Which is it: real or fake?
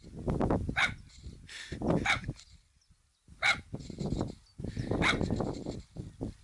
real